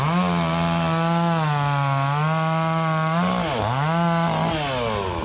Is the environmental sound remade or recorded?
recorded